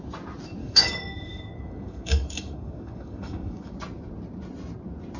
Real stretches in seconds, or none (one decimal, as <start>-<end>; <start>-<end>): 0.0-0.6; 3.7-5.2